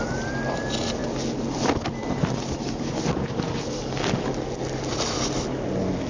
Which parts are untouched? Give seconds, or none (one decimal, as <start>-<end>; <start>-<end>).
0.0-2.0; 3.6-6.1